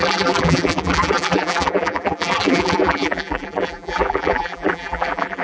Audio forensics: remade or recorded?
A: remade